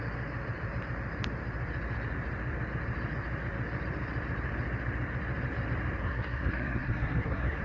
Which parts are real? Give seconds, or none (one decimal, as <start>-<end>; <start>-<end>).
0.0-6.0